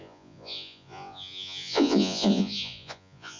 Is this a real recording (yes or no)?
no